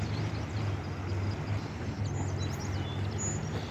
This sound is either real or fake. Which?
real